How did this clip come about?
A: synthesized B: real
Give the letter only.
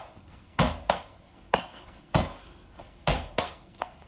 A